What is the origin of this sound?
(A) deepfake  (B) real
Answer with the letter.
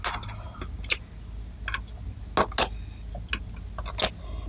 B